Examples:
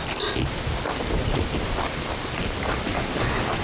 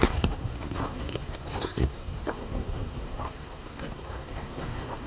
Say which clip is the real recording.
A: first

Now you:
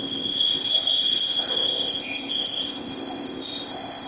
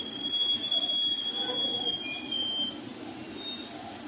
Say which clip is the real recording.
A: second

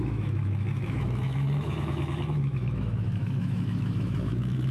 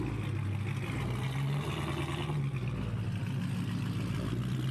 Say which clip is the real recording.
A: second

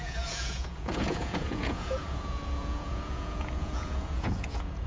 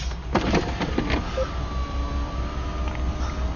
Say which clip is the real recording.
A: second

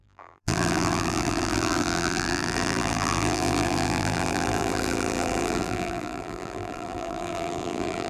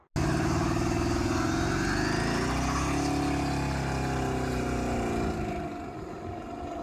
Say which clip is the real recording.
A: second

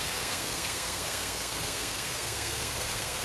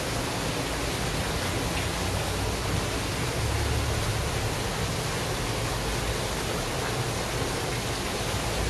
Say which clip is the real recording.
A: second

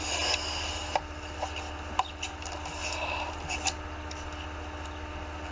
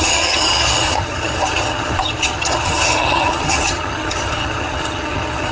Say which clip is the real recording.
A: first